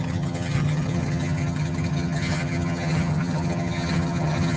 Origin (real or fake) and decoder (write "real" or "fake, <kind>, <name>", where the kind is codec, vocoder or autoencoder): fake, vocoder, HiFi-GAN